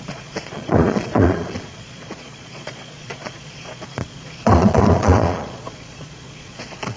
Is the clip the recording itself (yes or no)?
no